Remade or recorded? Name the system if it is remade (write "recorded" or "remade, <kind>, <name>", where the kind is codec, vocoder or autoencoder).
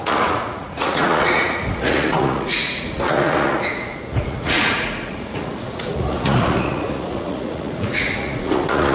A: remade, vocoder, Vocos